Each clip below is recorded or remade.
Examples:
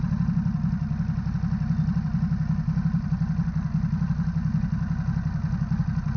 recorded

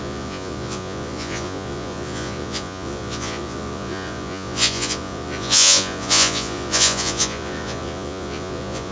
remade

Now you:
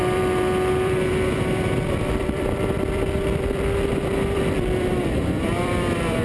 remade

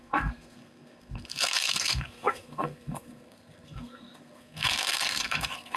remade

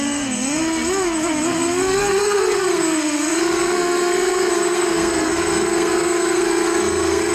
remade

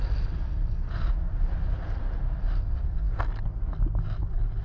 recorded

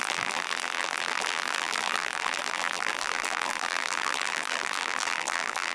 remade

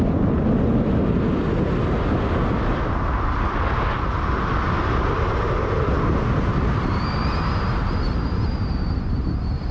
recorded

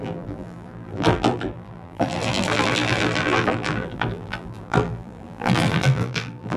remade